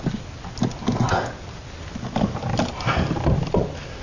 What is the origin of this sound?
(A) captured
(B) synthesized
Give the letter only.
A